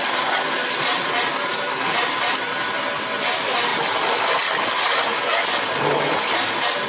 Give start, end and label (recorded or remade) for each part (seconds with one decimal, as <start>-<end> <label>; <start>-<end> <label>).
0.0-6.9 recorded